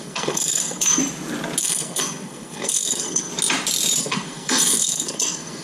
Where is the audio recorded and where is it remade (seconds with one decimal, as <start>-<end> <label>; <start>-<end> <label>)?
0.0-1.0 remade; 1.0-1.6 recorded; 1.6-3.3 remade; 3.3-4.0 recorded; 4.0-5.6 remade